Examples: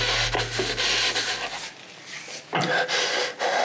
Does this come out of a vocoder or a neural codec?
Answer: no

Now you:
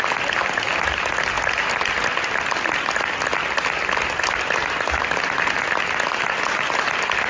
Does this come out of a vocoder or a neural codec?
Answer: no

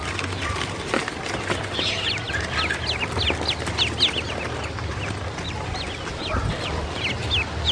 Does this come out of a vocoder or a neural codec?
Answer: no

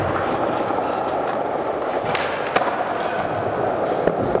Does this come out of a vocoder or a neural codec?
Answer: no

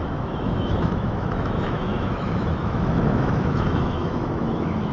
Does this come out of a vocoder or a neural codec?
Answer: yes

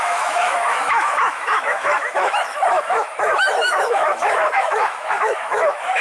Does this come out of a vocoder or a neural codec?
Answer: yes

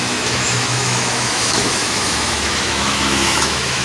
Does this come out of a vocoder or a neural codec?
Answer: yes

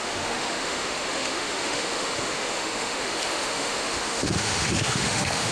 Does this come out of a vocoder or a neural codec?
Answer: yes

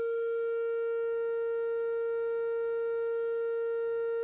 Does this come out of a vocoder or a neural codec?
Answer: yes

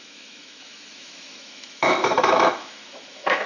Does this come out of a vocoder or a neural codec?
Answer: yes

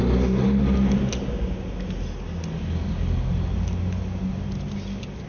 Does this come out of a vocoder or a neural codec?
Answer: no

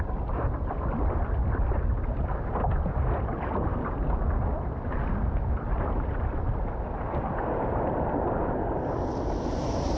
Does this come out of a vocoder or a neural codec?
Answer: no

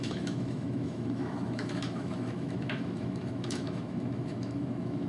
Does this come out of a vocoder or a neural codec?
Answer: yes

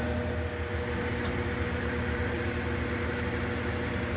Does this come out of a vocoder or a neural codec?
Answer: no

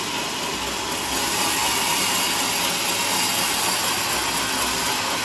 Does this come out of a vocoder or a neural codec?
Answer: no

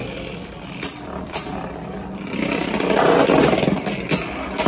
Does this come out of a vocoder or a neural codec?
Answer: no